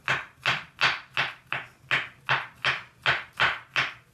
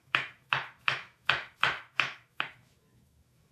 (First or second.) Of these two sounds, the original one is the first